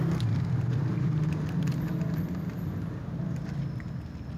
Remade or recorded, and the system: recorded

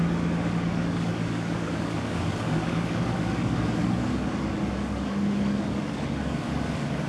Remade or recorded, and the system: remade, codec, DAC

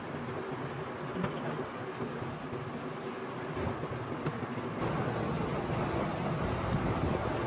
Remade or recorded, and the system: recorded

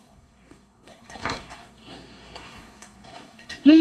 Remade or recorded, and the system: remade, codec, SNAC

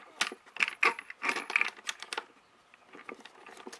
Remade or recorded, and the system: recorded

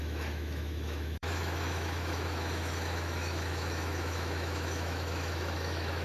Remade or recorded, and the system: remade, autoencoder, DAC-VAE